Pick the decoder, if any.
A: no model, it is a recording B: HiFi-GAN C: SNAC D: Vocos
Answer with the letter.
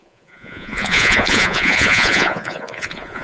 D